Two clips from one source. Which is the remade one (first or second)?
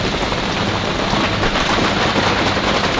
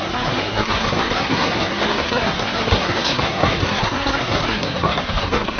second